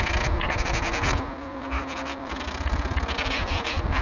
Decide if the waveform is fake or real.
fake